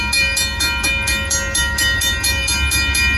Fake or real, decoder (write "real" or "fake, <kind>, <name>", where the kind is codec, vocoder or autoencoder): real